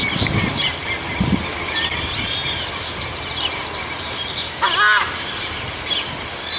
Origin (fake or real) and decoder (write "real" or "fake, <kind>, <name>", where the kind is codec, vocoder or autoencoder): real